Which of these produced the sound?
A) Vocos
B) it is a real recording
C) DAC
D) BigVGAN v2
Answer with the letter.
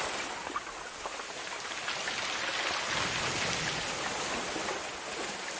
B